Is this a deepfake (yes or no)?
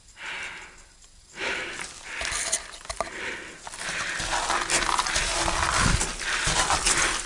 no